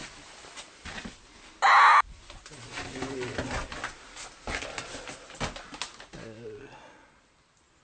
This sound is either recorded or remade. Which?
recorded